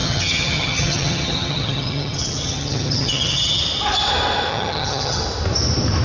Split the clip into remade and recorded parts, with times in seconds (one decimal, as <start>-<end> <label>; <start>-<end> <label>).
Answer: 0.0-3.6 remade; 3.6-4.5 recorded; 4.5-5.2 remade; 5.2-6.0 recorded